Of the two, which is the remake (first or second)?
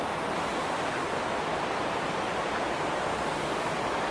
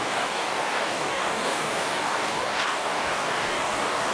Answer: second